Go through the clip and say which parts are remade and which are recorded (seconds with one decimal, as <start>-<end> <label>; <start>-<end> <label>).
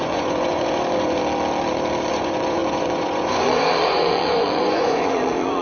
0.0-1.2 remade; 1.2-2.1 recorded; 2.1-5.6 remade